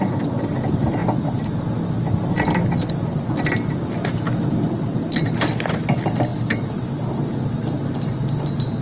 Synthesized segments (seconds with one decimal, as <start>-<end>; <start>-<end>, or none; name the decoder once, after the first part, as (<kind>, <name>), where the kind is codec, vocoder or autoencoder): 0.0-1.0 (vocoder, BigVGAN v2); 5.7-8.8